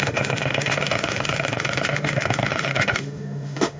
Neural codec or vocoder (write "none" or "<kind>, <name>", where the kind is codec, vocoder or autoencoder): autoencoder, DAC-VAE